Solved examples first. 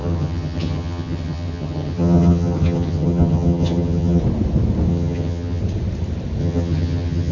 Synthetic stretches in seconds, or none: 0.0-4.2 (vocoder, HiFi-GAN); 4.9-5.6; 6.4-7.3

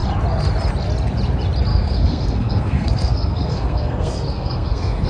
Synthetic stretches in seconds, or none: 1.7-5.1 (codec, SNAC)

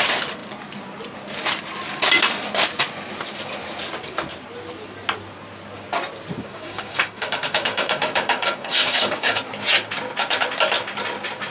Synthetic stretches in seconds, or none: 6.4-9.4 (codec, DAC)

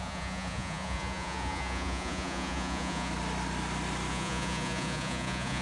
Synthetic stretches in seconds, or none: 0.0-3.1 (vocoder, Vocos); 4.1-5.6